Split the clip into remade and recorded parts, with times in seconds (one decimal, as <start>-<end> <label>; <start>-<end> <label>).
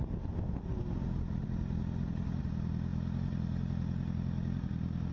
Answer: 0.0-5.1 recorded